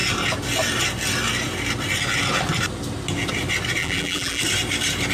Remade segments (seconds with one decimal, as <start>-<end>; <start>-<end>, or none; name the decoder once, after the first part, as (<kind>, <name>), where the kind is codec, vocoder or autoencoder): 3.8-4.4 (vocoder, BigVGAN v2)